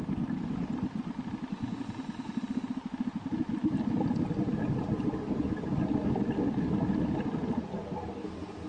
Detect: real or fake real